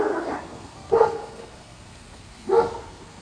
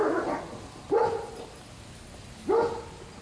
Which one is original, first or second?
second